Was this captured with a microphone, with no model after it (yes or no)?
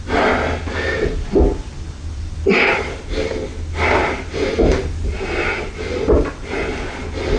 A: yes